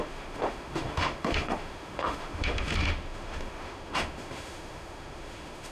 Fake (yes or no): yes